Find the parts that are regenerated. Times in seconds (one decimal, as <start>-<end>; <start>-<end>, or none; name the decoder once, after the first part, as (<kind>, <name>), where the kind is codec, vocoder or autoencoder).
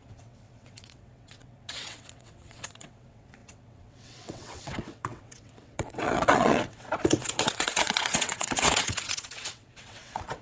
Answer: 0.0-10.4 (vocoder, WaveNeXt)